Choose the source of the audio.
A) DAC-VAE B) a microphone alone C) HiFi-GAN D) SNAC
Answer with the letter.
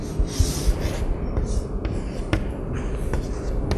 B